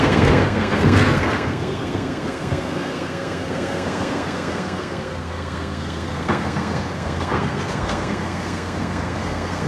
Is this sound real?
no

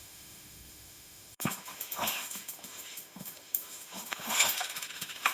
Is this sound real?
no